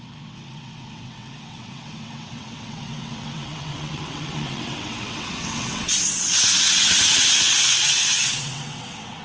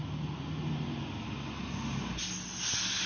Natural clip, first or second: second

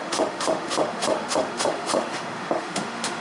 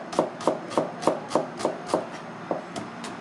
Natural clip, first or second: second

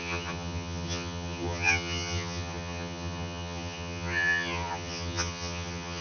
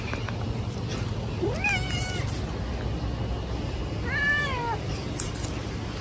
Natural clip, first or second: second